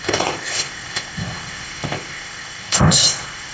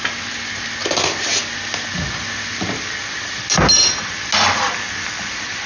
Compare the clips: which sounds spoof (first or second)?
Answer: first